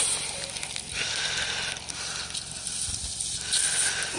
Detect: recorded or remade recorded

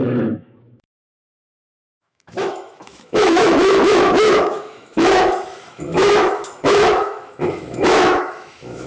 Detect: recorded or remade remade